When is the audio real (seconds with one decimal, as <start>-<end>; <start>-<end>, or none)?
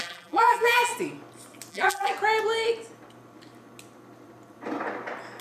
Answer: 0.9-1.7; 2.1-5.4